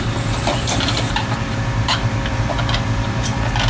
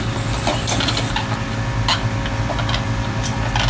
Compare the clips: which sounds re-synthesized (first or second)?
first